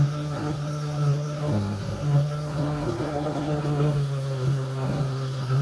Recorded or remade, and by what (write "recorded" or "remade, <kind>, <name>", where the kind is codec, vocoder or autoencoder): remade, codec, SNAC